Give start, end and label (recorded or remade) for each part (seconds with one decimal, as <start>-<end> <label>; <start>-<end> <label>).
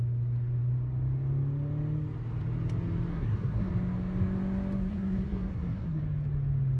0.0-3.1 recorded; 3.1-3.7 remade; 3.7-4.9 recorded; 4.9-6.0 remade; 6.0-6.8 recorded